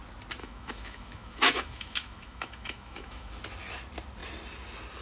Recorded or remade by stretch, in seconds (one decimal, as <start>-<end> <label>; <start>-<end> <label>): 0.0-0.4 recorded; 0.4-3.4 remade; 3.4-5.0 recorded